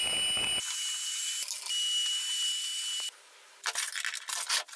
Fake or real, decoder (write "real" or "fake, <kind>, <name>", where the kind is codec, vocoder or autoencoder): real